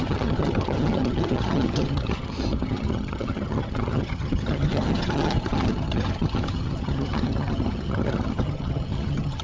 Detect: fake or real fake